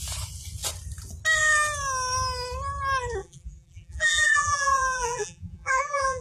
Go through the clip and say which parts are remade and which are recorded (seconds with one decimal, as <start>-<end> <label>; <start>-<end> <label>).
0.0-3.2 recorded; 3.2-6.2 remade